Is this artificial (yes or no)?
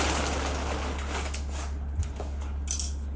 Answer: no